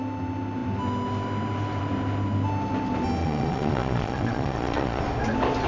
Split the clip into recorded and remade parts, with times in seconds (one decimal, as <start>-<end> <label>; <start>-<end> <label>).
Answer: 0.0-3.2 recorded; 3.2-5.0 remade; 5.0-5.7 recorded